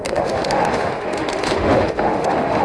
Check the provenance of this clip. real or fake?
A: fake